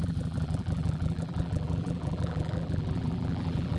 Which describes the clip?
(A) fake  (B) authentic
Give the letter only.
A